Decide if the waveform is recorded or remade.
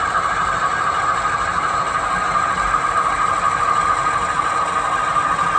recorded